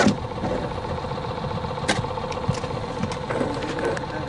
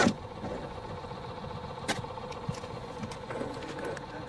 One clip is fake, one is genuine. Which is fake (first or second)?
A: second